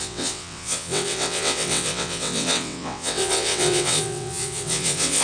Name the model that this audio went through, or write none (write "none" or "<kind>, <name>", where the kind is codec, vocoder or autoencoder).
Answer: vocoder, WaveNeXt